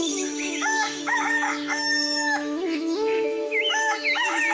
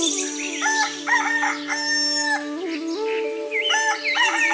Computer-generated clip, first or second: first